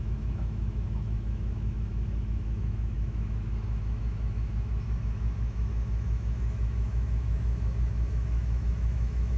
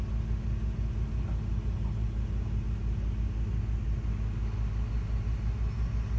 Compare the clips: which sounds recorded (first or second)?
second